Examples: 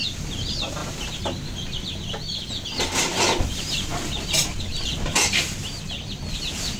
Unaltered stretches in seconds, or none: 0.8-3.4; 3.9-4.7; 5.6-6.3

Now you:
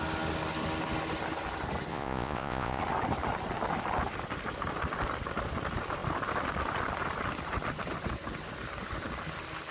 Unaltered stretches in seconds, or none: 0.0-1.9; 2.8-9.7

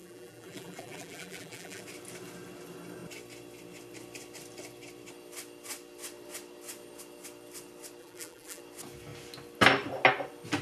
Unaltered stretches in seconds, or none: 1.8-8.0; 8.6-10.6

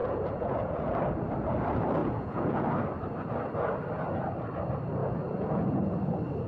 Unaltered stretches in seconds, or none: 0.9-2.0; 2.6-5.0; 5.8-6.5

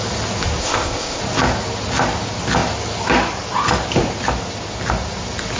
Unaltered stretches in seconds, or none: 0.0-0.6; 1.2-5.6

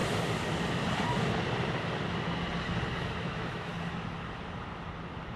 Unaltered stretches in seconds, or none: 0.0-3.2; 3.7-5.4

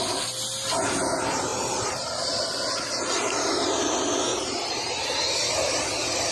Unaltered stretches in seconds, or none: 0.0-1.5; 2.4-4.3; 5.0-6.3